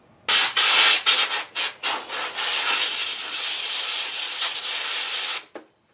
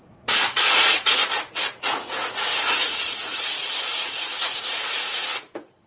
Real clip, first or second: first